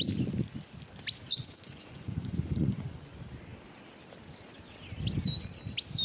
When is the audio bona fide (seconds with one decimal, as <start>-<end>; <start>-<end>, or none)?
0.0-1.3; 3.1-6.0

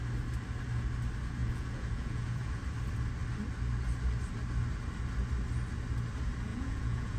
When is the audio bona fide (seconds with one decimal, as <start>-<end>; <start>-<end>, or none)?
0.0-1.4; 2.6-6.5

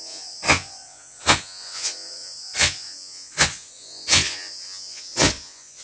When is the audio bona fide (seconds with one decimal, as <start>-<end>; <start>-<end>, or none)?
none

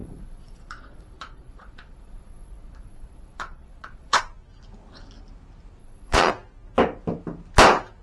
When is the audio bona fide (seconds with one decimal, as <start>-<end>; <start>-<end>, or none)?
4.2-5.8; 6.3-8.0

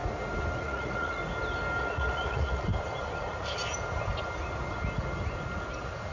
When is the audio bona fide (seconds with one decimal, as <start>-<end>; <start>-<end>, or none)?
0.0-0.6; 1.2-1.8; 2.7-6.1

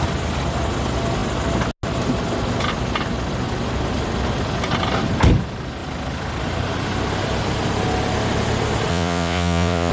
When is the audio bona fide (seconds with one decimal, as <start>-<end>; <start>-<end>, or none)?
0.0-8.9

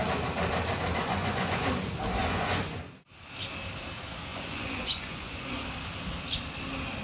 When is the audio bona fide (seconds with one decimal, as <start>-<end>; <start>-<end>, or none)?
0.0-1.0; 1.7-2.2; 2.8-4.3; 5.6-7.0